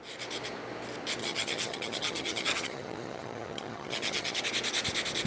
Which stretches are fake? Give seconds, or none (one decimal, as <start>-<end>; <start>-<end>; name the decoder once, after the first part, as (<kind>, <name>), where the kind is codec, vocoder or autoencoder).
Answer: 1.2-4.4 (vocoder, HiFi-GAN)